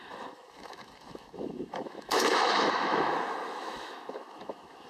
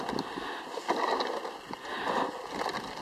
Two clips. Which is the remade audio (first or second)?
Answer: first